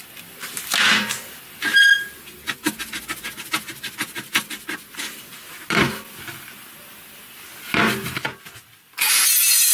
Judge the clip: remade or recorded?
recorded